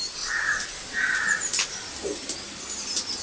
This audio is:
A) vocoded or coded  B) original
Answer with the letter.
B